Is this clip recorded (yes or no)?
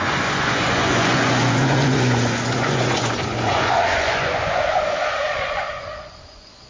no